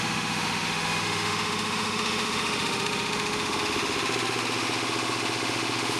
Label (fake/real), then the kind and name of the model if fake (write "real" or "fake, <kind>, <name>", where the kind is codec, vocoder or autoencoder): fake, autoencoder, DAC-VAE